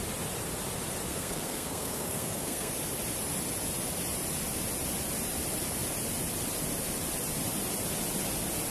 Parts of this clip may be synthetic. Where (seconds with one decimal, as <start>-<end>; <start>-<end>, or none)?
1.1-2.7